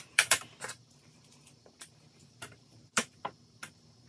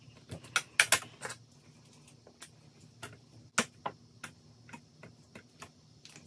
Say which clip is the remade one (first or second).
first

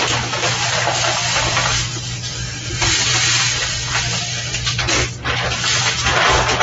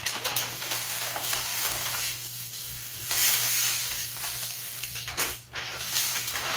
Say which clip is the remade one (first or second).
second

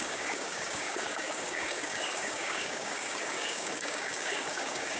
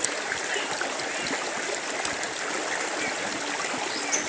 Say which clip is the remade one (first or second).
first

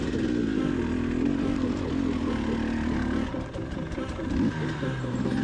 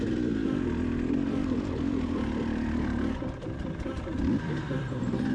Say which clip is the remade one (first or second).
second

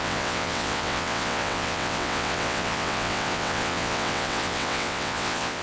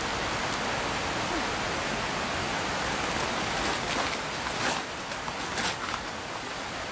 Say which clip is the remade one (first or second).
first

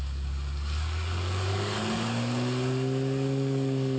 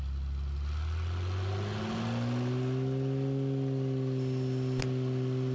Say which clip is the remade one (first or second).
first